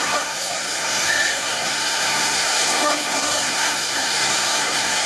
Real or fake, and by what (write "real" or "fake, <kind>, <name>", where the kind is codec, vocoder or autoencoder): fake, codec, SNAC